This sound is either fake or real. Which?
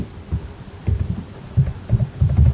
fake